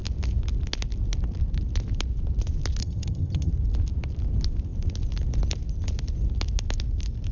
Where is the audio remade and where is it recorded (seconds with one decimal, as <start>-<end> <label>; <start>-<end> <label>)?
0.0-2.8 recorded; 2.8-3.5 remade; 3.5-7.3 recorded